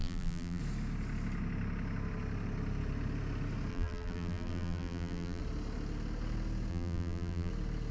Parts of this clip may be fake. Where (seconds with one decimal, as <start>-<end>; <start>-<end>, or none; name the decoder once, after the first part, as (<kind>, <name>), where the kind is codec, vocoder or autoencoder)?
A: 0.0-0.6 (vocoder, BigVGAN v2); 3.7-5.4; 6.7-7.5